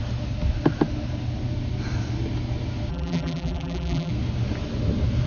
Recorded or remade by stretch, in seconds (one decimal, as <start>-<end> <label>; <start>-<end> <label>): 0.0-2.9 recorded; 2.9-4.1 remade; 4.1-5.3 recorded